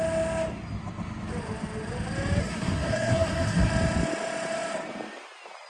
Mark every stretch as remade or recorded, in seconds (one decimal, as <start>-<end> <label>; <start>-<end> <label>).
0.0-2.4 recorded; 2.4-3.7 remade; 3.7-5.7 recorded

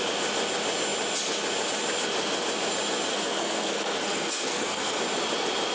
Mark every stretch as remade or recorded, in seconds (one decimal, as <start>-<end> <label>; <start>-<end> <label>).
0.0-3.1 recorded; 3.1-5.0 remade; 5.0-5.7 recorded

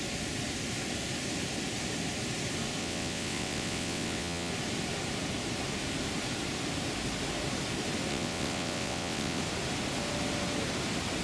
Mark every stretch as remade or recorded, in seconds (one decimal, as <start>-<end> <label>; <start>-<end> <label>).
0.0-2.8 recorded; 2.8-4.5 remade; 4.5-8.1 recorded; 8.1-9.4 remade; 9.4-11.2 recorded